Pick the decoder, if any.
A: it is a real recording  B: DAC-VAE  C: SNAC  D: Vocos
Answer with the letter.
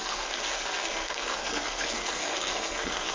C